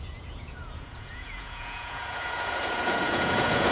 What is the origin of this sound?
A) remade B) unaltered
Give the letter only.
A